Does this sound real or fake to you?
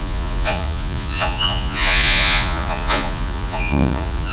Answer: fake